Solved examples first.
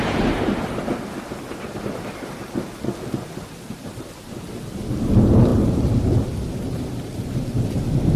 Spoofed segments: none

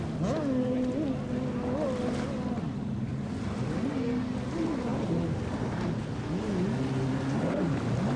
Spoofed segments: none

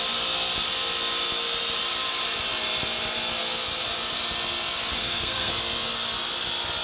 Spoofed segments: 5.0-5.5

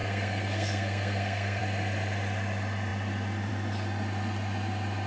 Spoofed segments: 0.0-1.6